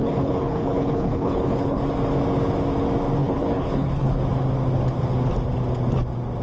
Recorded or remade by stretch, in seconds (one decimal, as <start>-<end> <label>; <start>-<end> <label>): 0.0-1.8 remade; 1.8-3.2 recorded; 3.2-4.2 remade; 4.2-6.4 recorded